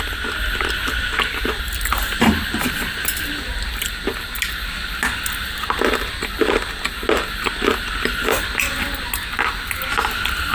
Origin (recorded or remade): recorded